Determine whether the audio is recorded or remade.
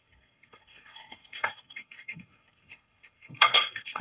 remade